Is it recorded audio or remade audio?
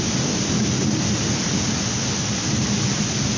recorded